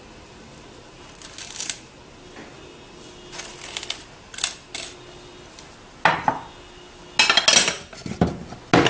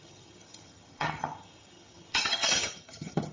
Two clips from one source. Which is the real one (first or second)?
first